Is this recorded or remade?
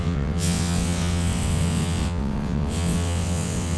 remade